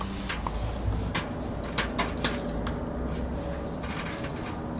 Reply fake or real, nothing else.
real